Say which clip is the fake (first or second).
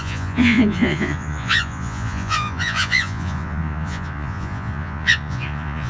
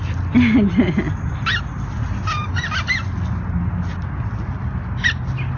first